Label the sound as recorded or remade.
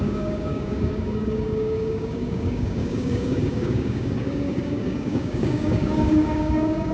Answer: remade